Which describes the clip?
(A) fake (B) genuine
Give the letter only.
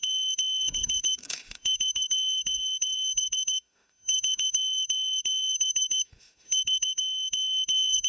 A